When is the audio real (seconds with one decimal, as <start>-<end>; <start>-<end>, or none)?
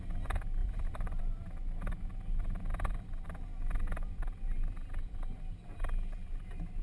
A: 0.0-0.6; 1.2-2.7; 5.5-6.8